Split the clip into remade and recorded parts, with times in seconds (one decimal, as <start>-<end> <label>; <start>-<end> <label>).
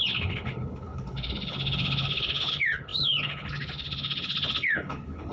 0.0-5.3 remade